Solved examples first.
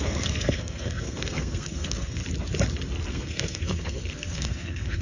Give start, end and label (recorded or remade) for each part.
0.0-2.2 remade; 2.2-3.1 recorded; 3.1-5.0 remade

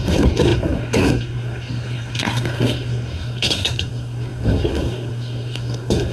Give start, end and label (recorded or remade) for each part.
0.0-6.1 remade